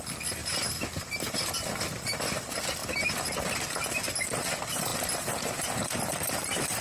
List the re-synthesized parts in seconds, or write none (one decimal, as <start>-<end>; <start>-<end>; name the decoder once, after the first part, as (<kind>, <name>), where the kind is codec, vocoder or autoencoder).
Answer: none

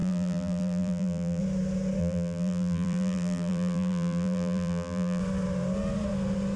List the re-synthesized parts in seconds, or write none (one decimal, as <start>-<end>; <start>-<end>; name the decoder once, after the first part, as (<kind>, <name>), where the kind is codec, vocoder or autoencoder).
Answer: 0.0-1.4 (vocoder, BigVGAN v2); 2.0-5.2

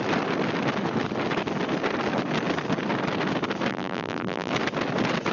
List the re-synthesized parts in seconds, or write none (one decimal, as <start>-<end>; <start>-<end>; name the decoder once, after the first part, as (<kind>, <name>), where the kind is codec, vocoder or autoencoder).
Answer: 3.7-4.5 (vocoder, BigVGAN v2)

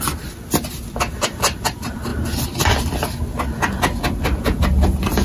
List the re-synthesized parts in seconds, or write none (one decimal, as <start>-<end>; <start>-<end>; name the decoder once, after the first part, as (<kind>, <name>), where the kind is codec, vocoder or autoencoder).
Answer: 0.0-2.1 (vocoder, BigVGAN v2); 4.6-5.2

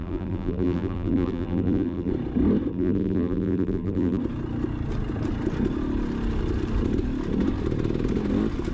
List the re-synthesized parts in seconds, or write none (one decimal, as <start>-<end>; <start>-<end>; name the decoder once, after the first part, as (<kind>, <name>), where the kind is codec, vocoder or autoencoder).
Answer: 0.0-2.1 (vocoder, BigVGAN v2); 2.7-4.2